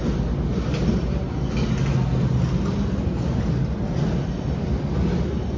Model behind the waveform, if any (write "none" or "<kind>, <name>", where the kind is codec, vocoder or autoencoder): none